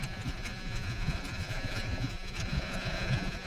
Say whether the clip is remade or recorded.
remade